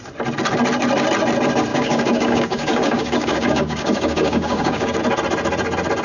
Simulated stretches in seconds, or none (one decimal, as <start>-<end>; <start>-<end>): 1.7-5.0